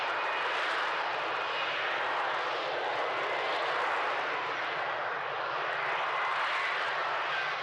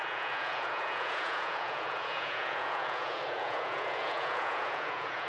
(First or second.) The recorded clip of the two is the first